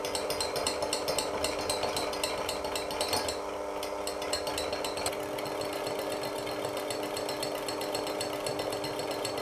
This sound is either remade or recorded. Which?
recorded